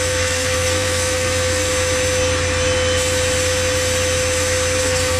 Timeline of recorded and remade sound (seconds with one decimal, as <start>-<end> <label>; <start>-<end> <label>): 0.0-1.7 remade; 1.7-4.8 recorded; 4.8-5.2 remade